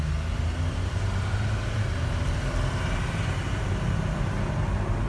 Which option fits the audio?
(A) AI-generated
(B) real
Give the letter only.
B